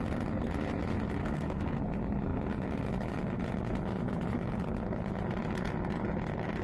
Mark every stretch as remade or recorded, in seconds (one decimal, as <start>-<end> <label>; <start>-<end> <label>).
0.0-1.2 recorded; 1.2-1.8 remade; 1.8-6.6 recorded